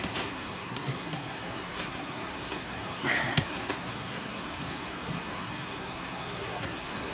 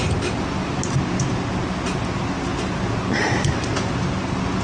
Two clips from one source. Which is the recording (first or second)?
second